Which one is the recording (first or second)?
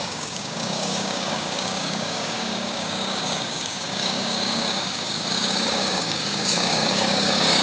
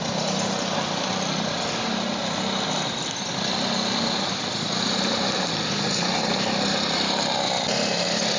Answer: second